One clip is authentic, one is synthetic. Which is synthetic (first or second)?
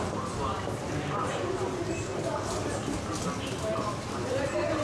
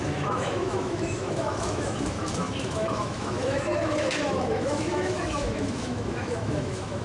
second